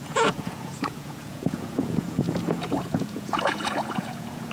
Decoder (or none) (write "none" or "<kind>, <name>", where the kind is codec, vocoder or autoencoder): vocoder, Vocos